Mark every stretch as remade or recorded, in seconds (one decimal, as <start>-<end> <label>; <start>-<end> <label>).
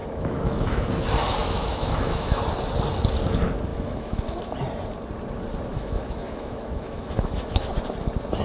0.0-0.9 remade; 0.9-1.4 recorded; 1.4-2.4 remade; 2.4-3.7 recorded; 3.7-4.4 remade; 4.4-5.7 recorded; 5.7-7.7 remade; 7.7-8.4 recorded